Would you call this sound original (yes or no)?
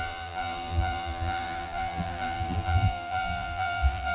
no